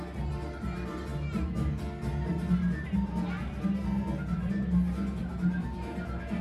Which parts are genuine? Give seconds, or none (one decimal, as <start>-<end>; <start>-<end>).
0.0-6.4